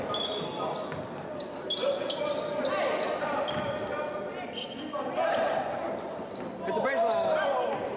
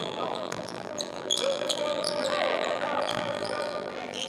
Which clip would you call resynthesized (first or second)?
second